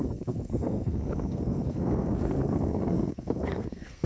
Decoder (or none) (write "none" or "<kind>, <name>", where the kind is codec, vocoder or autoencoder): codec, SNAC